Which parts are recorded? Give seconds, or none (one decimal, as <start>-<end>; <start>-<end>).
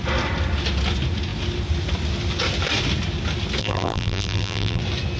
0.0-3.6; 4.8-5.2